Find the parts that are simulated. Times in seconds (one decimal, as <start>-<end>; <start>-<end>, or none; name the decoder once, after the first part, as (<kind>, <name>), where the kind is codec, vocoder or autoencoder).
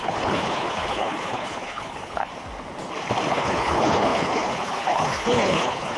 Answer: 0.0-2.3 (codec, HILCodec); 3.3-6.0